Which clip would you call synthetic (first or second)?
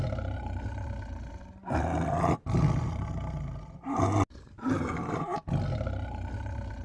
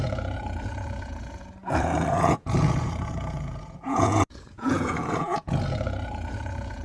second